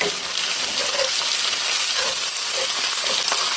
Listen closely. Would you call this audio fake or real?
real